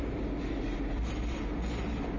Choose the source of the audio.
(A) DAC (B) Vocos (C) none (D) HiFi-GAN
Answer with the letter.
C